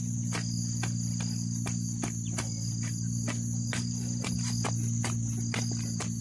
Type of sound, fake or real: real